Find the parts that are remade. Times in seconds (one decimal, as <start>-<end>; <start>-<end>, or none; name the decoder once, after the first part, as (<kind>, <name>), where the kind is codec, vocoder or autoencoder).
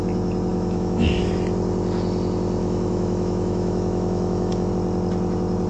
0.5-1.2 (autoencoder, DAC-VAE); 2.6-4.7